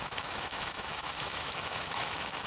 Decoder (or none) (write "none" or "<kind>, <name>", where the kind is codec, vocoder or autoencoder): autoencoder, DAC-VAE